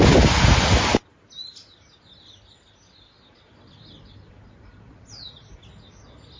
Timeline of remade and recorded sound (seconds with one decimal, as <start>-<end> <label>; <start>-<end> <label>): 0.0-6.4 recorded